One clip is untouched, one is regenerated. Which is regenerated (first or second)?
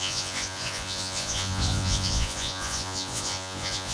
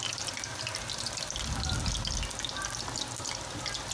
first